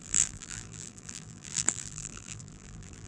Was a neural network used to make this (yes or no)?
yes